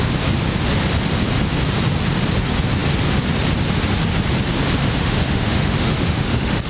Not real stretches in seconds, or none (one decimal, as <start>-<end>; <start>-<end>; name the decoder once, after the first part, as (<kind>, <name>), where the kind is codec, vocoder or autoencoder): 4.8-6.7 (autoencoder, DAC-VAE)